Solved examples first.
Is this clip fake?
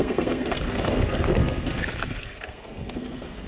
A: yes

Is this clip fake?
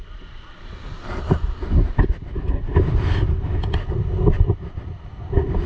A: no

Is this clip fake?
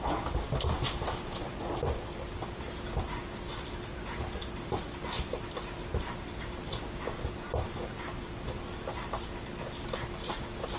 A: no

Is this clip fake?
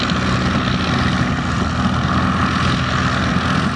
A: no